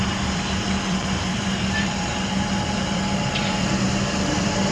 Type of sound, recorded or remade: remade